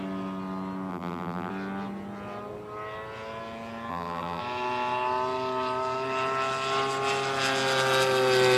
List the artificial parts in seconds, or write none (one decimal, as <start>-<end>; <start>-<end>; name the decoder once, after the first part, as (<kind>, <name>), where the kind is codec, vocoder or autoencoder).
0.9-1.5 (vocoder, BigVGAN v2); 3.9-4.4